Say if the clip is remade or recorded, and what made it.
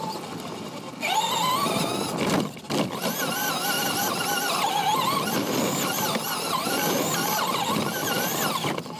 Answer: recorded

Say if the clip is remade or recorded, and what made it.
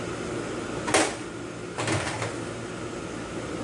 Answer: recorded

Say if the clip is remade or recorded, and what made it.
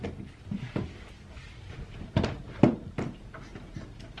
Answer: recorded